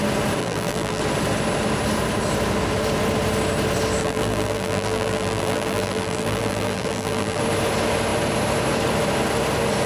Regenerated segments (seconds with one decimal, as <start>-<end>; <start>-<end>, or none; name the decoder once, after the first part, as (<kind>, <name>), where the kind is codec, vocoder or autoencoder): 0.4-1.0 (vocoder, BigVGAN v2); 4.0-7.4